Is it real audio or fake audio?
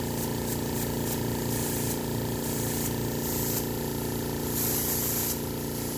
real